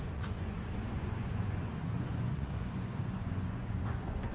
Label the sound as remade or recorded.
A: remade